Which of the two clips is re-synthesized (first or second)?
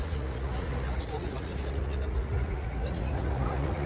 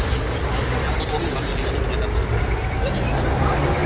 first